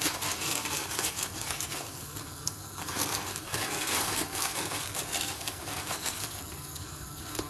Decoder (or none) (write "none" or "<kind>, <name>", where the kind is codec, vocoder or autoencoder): codec, SNAC